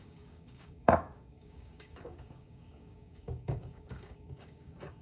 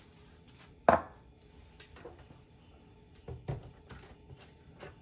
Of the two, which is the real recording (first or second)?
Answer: second